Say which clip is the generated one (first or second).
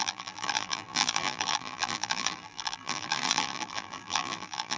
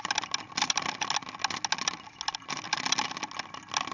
first